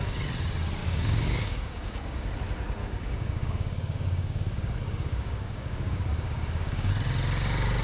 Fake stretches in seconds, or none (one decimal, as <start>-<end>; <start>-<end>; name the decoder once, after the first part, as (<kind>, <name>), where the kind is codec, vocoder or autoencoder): 0.8-2.3 (codec, DAC); 2.8-6.9